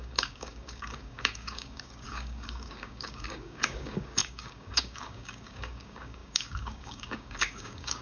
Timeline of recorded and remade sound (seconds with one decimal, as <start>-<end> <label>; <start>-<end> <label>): 0.0-8.0 remade